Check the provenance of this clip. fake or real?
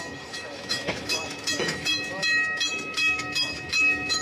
fake